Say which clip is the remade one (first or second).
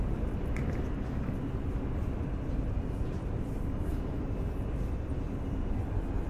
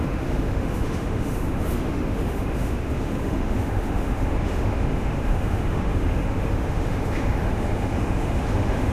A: second